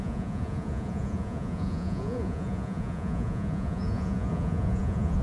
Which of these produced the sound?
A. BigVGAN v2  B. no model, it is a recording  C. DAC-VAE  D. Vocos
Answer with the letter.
D